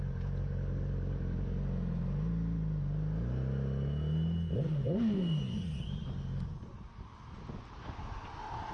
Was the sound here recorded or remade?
recorded